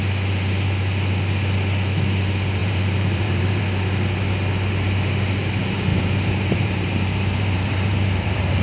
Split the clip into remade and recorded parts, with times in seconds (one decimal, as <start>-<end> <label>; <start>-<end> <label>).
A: 0.0-2.6 recorded; 2.6-3.6 remade; 3.6-5.9 recorded; 5.9-8.6 remade